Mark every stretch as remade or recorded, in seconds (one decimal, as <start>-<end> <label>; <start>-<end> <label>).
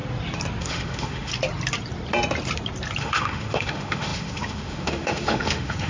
0.0-0.6 recorded; 0.6-1.3 remade; 1.3-3.0 recorded; 3.0-5.9 remade